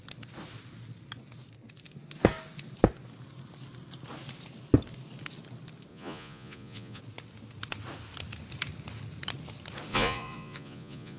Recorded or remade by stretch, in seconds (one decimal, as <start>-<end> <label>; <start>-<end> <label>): 0.0-5.9 recorded; 5.9-7.0 remade; 7.0-9.9 recorded; 9.9-11.2 remade